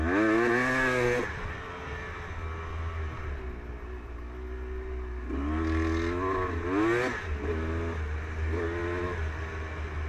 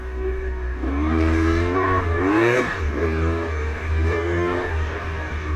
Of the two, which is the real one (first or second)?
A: first